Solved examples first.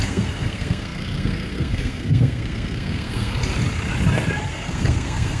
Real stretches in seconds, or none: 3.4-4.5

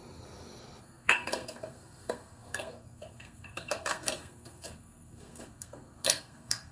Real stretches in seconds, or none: 0.0-0.8